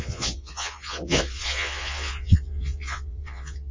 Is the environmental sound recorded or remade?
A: remade